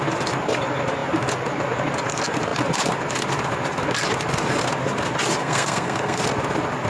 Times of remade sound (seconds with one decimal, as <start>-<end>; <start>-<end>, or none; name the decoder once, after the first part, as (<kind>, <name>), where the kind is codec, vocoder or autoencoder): 5.4-6.2 (codec, SNAC)